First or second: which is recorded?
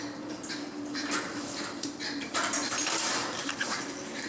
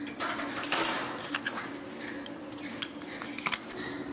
second